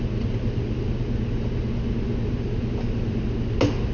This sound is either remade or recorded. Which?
recorded